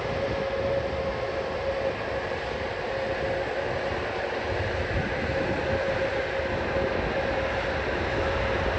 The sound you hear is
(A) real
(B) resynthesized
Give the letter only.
A